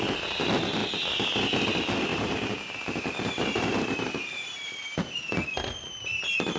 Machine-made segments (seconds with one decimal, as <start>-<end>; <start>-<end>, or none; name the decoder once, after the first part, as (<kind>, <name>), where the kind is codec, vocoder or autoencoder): 2.1-5.2 (vocoder, BigVGAN v2)